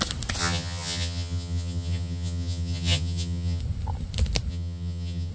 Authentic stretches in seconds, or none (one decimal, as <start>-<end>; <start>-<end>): 0.0-0.4; 3.6-4.5